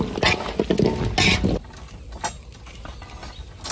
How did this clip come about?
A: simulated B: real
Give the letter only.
B